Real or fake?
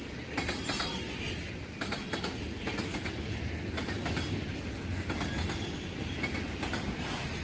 real